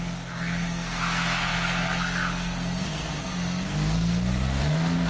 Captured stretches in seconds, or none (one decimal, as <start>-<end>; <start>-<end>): none